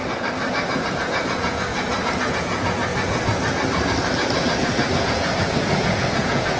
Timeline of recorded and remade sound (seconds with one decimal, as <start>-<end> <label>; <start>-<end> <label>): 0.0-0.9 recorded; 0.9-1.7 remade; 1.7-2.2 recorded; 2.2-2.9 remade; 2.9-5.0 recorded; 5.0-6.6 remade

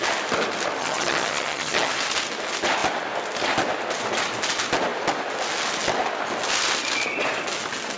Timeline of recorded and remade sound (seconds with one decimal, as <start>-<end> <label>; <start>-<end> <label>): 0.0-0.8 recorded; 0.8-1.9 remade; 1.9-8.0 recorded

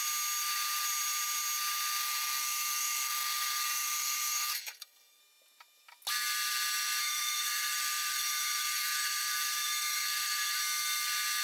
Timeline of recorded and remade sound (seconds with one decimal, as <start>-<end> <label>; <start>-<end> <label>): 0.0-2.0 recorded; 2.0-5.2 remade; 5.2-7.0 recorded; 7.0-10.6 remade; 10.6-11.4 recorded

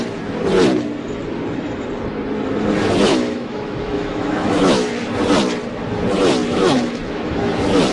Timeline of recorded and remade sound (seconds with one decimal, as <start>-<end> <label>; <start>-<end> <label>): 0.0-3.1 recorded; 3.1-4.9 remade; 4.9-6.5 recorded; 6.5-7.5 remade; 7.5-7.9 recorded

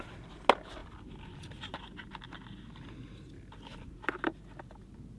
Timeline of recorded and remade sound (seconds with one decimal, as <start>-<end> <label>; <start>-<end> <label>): 0.0-5.2 recorded